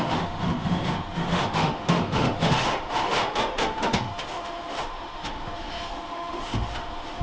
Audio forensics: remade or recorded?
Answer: remade